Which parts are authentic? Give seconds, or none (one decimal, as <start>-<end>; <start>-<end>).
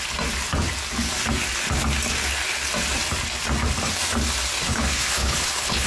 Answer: 0.0-4.7